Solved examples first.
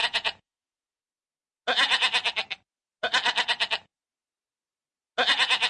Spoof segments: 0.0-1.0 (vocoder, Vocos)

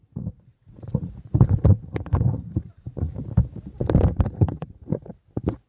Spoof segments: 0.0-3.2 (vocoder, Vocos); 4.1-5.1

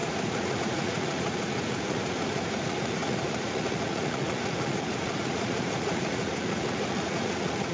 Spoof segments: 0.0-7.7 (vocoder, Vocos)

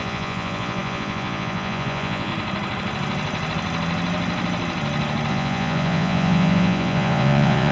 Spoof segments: 0.0-2.3 (vocoder, Vocos); 5.3-7.7

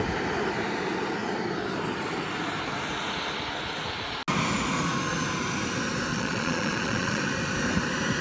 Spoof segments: 6.1-7.2 (vocoder, Vocos)